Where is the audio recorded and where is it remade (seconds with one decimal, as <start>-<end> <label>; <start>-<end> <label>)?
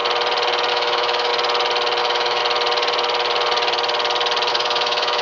0.0-0.7 recorded; 0.7-1.3 remade; 1.3-2.0 recorded; 2.0-2.4 remade; 2.4-4.5 recorded; 4.5-5.2 remade